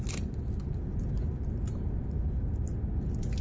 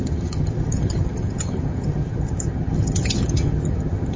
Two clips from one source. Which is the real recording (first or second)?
first